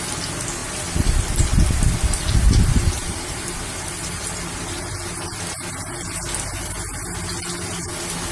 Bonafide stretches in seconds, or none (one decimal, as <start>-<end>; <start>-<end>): 0.0-2.9; 4.6-8.3